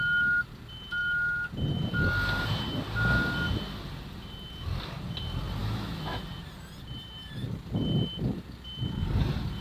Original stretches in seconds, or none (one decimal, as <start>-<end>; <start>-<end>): 0.0-5.6; 6.2-9.6